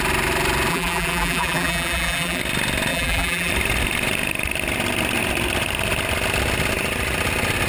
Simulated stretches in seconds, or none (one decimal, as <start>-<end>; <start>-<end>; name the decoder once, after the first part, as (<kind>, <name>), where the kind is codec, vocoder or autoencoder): 0.7-2.4 (vocoder, BigVGAN v2); 2.9-3.5